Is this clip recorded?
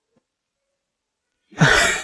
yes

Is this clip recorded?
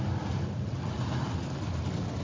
yes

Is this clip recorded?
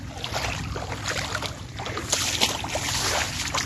yes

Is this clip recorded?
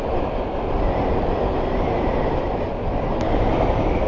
yes